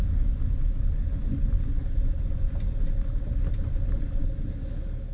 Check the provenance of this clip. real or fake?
real